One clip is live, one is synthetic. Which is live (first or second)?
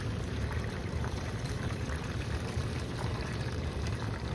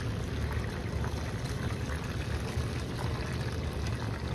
second